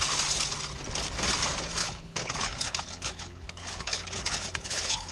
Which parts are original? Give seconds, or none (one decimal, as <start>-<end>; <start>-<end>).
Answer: 0.0-1.8